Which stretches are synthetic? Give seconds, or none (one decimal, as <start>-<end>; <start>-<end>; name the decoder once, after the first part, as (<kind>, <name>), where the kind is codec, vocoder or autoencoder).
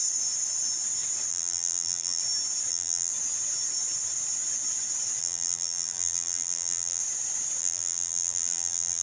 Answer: 1.3-2.2 (vocoder, BigVGAN v2); 2.7-3.1; 5.2-7.0; 7.6-9.0